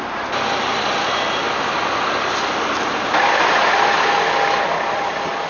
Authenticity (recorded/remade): recorded